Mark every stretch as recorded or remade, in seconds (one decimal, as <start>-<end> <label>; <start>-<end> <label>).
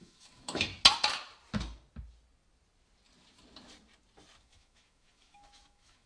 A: 0.0-0.7 remade; 0.7-4.4 recorded; 4.4-6.1 remade